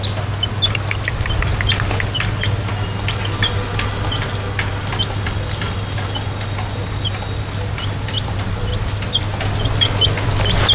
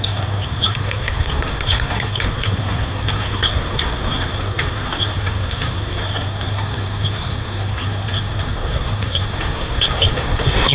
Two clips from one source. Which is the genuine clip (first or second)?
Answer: first